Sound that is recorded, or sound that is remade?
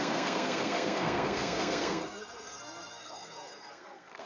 remade